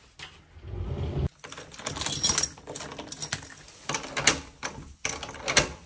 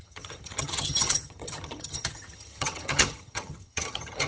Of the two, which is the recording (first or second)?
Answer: first